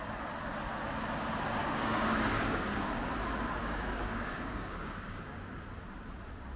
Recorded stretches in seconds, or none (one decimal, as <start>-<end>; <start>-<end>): 0.0-1.6; 3.1-3.6; 5.4-6.6